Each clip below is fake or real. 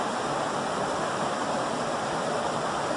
real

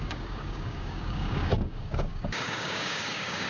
fake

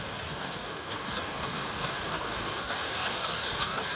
fake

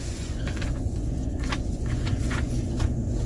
fake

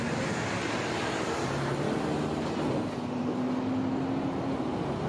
real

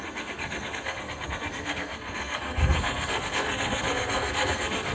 fake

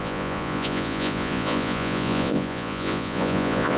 fake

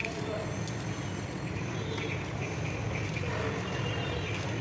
real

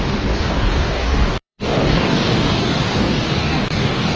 fake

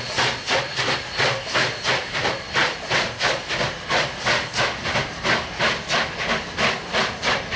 real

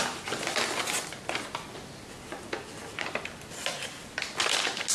real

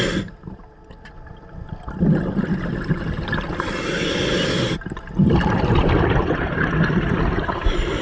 real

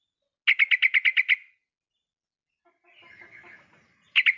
real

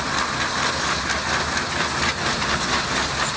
real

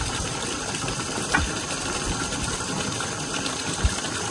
real